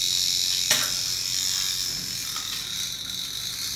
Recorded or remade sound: recorded